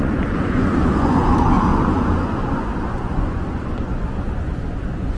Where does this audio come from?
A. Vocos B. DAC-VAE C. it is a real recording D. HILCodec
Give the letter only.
A